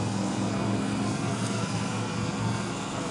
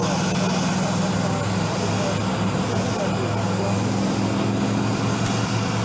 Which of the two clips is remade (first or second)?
first